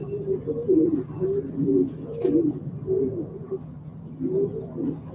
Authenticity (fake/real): fake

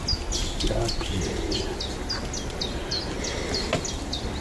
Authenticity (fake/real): real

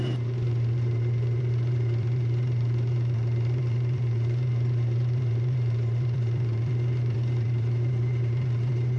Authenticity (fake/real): fake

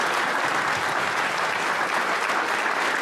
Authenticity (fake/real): real